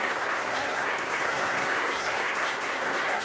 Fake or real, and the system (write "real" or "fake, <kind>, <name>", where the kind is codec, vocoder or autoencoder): fake, codec, SNAC